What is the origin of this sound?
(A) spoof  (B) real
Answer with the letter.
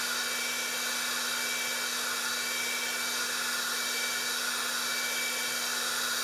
B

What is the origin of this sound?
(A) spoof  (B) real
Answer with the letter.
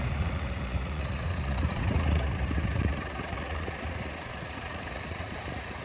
A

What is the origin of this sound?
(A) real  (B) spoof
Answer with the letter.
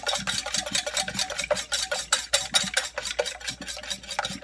A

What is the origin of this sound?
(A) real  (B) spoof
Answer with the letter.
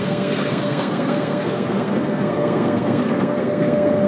B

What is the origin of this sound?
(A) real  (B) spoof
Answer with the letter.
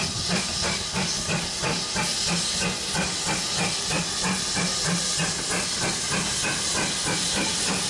A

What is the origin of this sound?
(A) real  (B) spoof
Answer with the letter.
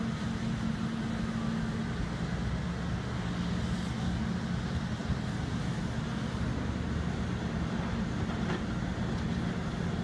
A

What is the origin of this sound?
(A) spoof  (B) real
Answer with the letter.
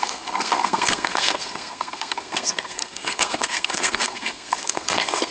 A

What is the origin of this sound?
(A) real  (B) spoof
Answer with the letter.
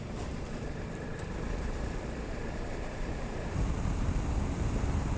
B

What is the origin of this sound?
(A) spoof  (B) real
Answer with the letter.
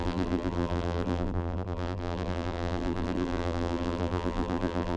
A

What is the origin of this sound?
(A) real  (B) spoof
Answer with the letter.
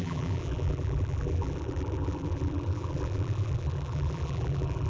B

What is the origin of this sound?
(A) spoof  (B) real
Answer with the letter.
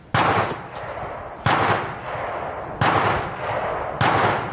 B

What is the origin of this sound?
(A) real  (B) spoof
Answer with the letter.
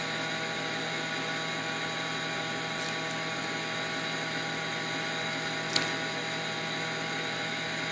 A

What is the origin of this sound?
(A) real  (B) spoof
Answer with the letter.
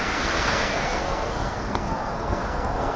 B